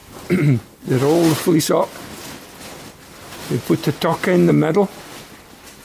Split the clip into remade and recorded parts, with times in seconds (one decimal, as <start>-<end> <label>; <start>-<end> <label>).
0.0-5.8 recorded